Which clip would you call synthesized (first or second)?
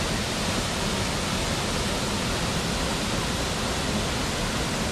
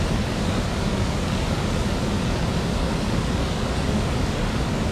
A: second